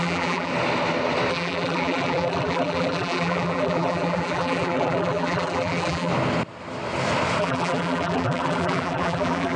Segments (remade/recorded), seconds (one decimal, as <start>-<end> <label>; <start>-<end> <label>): 0.0-0.5 remade; 0.5-1.3 recorded; 1.3-6.1 remade; 6.1-7.4 recorded; 7.4-9.6 remade